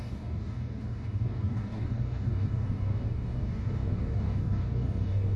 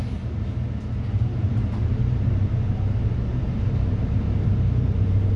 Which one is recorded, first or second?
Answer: second